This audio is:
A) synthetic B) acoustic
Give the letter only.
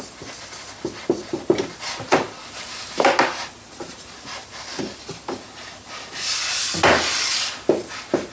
B